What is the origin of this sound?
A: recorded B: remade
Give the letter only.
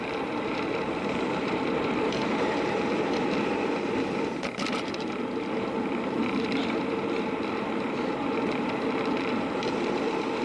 B